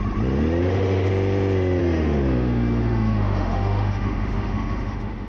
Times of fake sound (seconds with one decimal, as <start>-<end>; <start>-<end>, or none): 0.6-1.1; 1.8-5.3